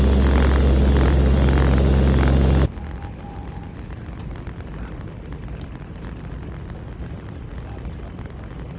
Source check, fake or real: real